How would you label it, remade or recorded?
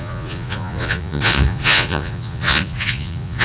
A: remade